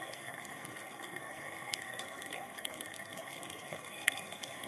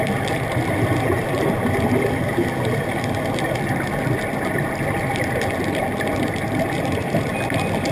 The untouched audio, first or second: second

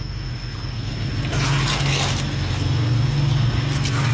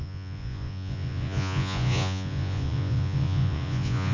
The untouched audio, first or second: first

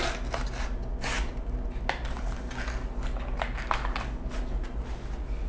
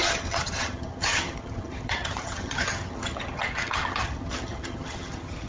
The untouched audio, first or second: first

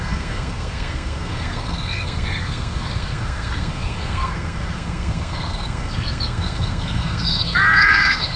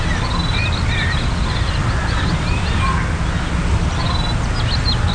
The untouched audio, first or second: second